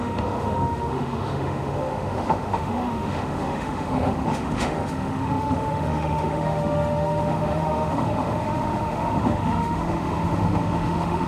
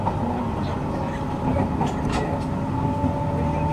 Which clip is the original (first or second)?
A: second